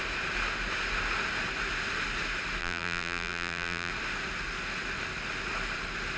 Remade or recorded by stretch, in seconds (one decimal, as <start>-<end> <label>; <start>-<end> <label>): 0.0-2.6 recorded; 2.6-3.9 remade; 3.9-6.2 recorded